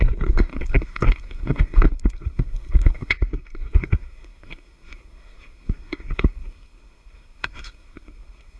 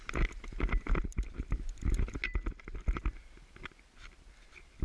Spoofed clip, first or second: first